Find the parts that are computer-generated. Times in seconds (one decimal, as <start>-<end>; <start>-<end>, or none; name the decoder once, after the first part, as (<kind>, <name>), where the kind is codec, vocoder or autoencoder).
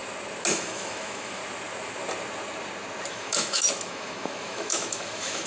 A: 0.5-1.4 (autoencoder, DAC-VAE); 3.1-5.5